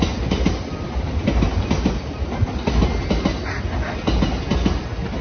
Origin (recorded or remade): recorded